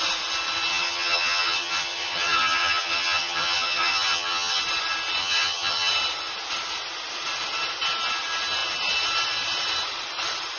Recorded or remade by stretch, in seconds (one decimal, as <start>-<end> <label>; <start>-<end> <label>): 0.0-0.7 recorded; 0.7-4.6 remade; 4.6-5.2 recorded; 5.2-5.9 remade; 5.9-10.6 recorded